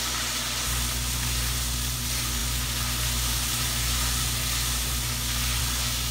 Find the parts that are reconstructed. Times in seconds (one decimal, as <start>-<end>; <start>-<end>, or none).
none